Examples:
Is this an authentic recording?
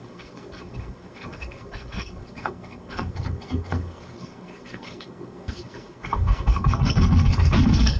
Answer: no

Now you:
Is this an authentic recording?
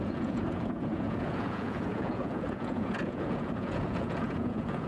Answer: no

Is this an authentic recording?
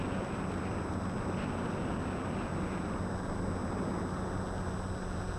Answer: yes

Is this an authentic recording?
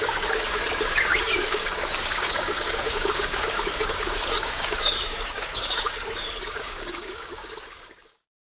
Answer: no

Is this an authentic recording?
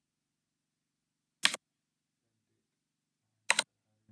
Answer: yes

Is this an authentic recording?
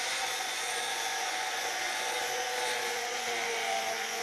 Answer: no